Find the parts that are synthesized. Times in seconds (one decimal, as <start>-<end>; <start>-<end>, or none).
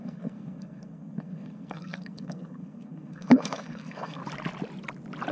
0.0-4.2